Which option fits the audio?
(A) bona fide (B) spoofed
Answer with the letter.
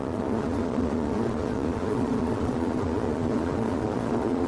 B